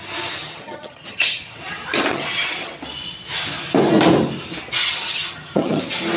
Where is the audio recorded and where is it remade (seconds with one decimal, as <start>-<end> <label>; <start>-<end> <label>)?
0.0-0.4 recorded; 0.4-1.6 remade; 1.6-2.1 recorded; 2.1-2.7 remade; 2.7-4.8 recorded; 4.8-5.8 remade; 5.8-6.2 recorded